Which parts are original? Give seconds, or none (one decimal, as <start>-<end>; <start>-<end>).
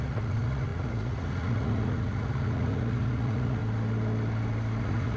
3.6-4.8